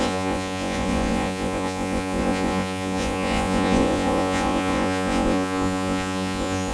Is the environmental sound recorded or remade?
remade